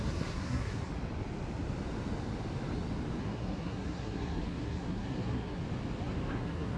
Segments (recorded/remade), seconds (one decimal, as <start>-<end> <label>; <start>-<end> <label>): 0.0-0.9 remade; 0.9-3.2 recorded; 3.2-5.6 remade; 5.6-6.3 recorded; 6.3-6.8 remade